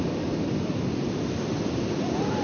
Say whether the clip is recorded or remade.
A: recorded